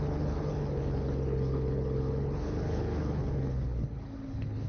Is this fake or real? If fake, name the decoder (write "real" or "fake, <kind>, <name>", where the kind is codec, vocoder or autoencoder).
fake, codec, HILCodec